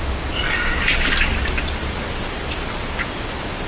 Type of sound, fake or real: real